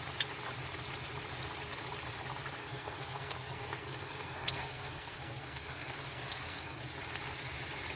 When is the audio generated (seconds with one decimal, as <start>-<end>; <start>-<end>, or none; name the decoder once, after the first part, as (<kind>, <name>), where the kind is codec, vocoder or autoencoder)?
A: 2.6-6.8 (codec, SNAC)